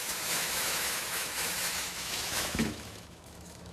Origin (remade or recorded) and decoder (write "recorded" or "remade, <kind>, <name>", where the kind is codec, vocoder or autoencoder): remade, autoencoder, DAC-VAE